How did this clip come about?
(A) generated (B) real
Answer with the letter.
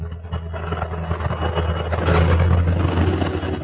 B